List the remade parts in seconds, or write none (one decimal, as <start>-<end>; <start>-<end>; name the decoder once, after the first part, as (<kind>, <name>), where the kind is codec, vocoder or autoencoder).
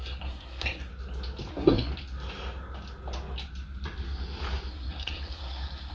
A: 0.0-0.9 (codec, SNAC); 1.5-1.9; 4.7-5.9